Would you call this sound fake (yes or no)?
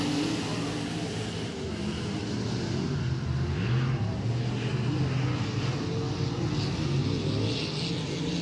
no